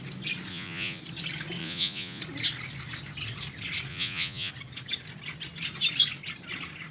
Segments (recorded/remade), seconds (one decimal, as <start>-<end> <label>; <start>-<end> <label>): 0.0-0.5 recorded; 0.5-1.0 remade; 1.0-1.6 recorded; 1.6-2.2 remade; 2.2-3.9 recorded; 3.9-4.5 remade; 4.5-6.9 recorded